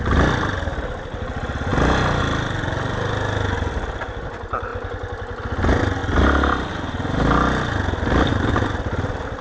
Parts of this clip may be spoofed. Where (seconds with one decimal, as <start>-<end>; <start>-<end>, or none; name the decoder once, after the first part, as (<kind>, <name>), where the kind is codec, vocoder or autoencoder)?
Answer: none